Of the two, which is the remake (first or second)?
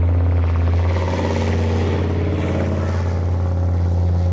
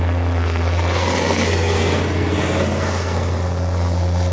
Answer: second